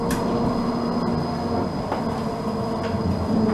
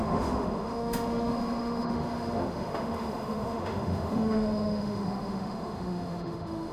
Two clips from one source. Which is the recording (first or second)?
first